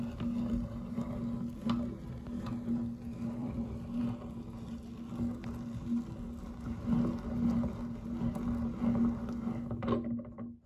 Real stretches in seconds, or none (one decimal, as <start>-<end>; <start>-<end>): 0.0-3.4; 4.0-10.7